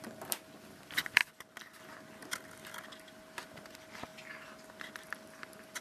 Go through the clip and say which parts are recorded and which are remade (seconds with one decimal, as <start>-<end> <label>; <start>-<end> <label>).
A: 0.0-5.8 recorded